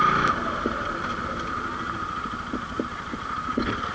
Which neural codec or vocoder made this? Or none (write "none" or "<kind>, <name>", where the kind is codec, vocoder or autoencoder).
none